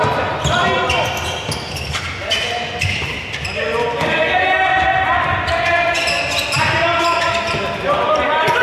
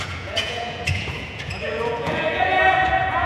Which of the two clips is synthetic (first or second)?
second